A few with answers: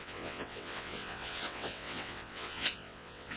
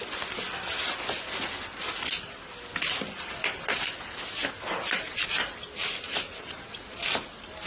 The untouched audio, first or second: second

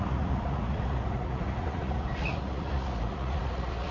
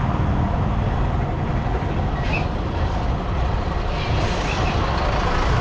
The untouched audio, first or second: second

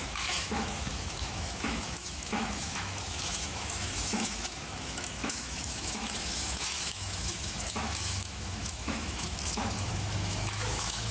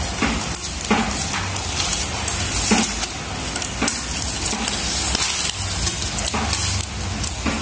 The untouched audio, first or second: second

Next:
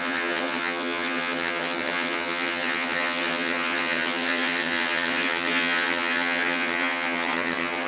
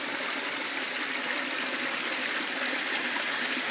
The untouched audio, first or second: second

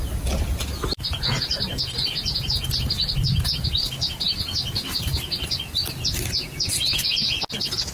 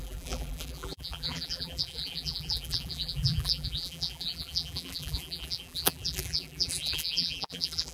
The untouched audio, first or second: first